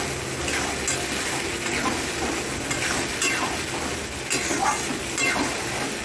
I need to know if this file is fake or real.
real